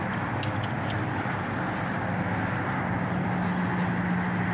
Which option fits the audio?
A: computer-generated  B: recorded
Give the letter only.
B